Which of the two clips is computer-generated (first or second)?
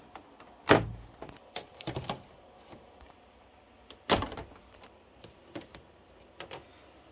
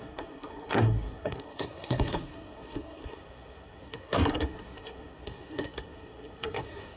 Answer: second